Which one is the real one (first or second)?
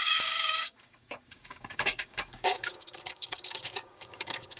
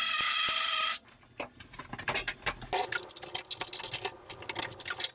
second